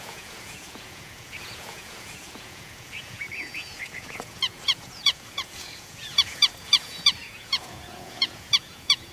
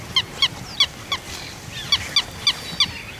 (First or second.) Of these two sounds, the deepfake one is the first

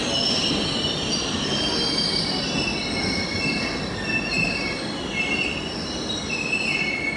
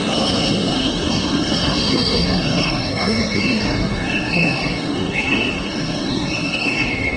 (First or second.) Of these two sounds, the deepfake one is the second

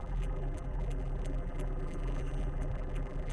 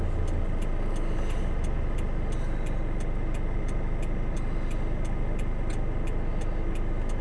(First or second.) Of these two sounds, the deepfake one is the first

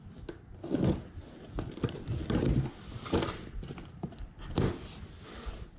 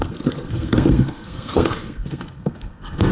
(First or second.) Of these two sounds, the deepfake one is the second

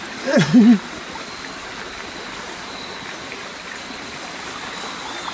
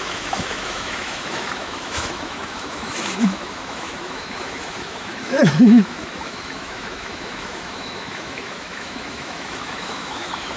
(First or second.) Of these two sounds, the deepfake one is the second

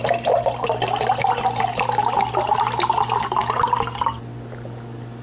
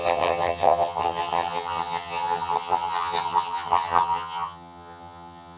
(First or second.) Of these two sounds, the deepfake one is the second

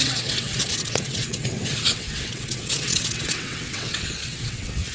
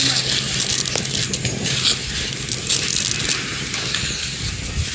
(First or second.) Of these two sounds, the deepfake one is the first